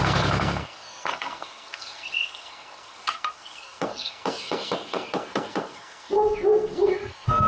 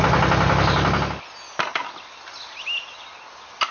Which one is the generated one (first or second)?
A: first